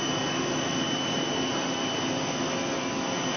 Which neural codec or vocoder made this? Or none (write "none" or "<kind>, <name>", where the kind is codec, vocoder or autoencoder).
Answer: none